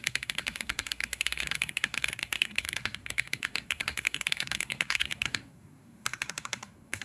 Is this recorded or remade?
remade